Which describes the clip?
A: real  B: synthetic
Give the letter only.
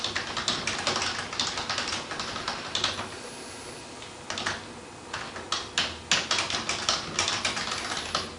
A